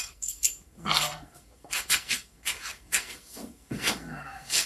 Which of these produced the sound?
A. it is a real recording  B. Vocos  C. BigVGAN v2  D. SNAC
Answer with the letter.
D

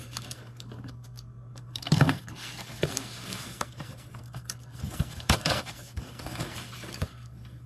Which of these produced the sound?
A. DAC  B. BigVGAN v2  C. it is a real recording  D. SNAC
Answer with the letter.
D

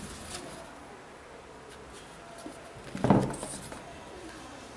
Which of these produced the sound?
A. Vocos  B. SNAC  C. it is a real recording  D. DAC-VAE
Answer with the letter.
C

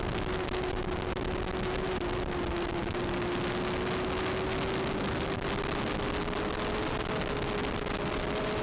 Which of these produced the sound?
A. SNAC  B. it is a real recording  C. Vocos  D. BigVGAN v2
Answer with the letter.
B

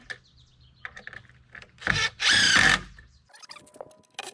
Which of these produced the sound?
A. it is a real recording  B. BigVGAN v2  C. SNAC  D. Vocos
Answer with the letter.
A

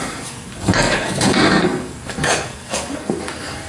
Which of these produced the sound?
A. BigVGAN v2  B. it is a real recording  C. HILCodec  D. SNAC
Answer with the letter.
D